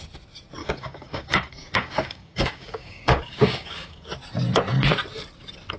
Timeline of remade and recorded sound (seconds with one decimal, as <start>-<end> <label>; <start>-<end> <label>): 0.0-0.6 recorded; 0.6-4.1 remade; 4.1-5.8 recorded